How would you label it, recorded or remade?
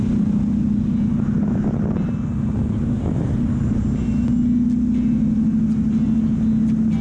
recorded